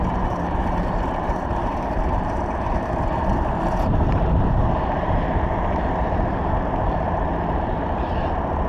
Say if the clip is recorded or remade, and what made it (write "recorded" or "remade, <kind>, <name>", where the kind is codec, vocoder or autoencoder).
remade, vocoder, BigVGAN v2